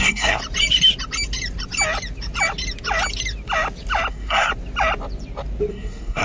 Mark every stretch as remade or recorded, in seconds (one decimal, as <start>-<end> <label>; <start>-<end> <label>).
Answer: 0.0-0.4 remade; 0.4-4.1 recorded; 4.1-4.5 remade; 4.5-5.7 recorded; 5.7-6.2 remade